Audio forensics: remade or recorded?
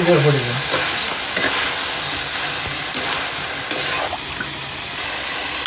recorded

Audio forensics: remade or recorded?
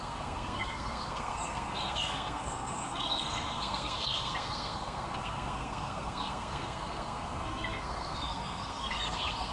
remade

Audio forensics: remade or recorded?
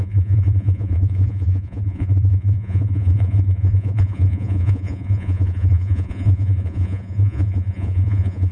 remade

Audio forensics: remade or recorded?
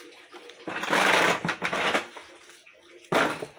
recorded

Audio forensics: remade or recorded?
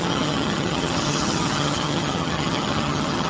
remade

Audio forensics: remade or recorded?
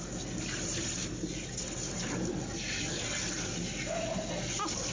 recorded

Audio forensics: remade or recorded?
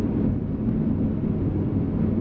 recorded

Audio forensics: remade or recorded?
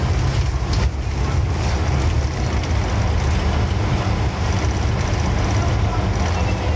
recorded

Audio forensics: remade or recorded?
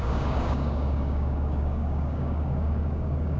remade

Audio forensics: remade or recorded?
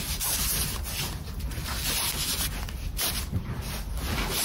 recorded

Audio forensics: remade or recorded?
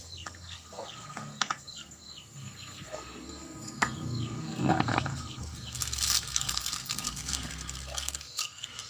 remade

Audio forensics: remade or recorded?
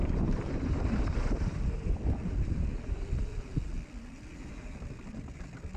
remade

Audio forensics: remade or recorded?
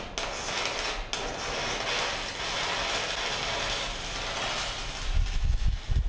recorded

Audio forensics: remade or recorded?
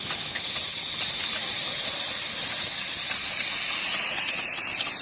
recorded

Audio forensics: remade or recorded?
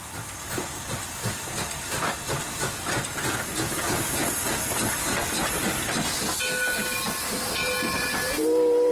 recorded